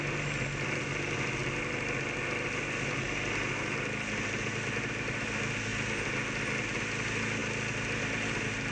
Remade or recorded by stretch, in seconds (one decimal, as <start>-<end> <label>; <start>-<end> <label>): 0.0-8.7 recorded